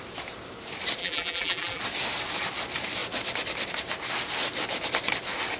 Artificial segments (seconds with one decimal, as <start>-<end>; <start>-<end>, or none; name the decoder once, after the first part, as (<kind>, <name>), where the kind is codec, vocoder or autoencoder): 1.0-1.8 (vocoder, BigVGAN v2)